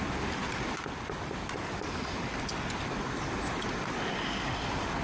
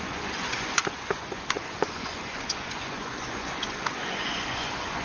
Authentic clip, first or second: first